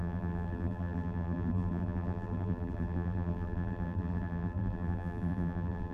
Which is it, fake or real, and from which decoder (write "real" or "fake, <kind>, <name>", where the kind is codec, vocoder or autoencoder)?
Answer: fake, vocoder, BigVGAN v2